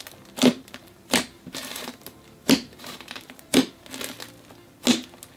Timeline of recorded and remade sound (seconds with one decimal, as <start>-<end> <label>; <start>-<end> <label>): 0.0-0.5 recorded; 0.5-3.7 remade; 3.7-5.4 recorded